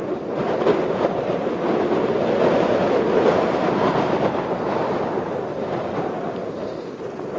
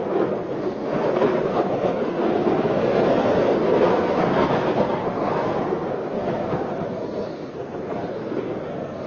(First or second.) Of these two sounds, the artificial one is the second